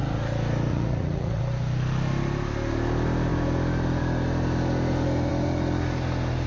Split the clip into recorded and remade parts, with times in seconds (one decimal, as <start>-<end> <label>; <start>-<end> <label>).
0.0-0.7 recorded; 0.7-1.4 remade; 1.4-6.5 recorded